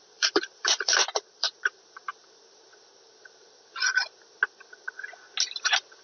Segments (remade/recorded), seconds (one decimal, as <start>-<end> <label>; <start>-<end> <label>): 0.0-2.1 remade; 2.1-6.0 recorded